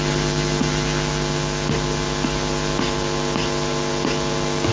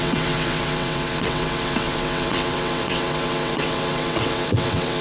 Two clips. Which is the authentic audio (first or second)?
first